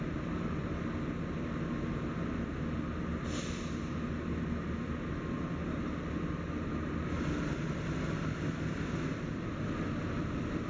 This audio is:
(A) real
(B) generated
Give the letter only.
A